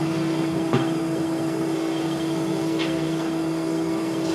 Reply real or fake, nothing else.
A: fake